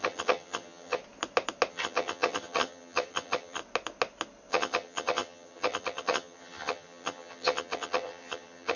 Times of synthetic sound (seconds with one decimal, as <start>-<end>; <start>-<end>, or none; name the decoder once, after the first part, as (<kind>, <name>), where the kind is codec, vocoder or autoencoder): 0.0-1.0 (vocoder, HiFi-GAN); 1.7-3.6; 4.5-8.8